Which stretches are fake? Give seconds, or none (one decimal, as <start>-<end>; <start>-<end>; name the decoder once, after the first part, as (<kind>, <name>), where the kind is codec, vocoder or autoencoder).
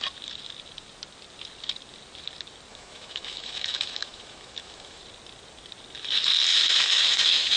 2.7-5.0 (autoencoder, DAC-VAE); 6.5-7.6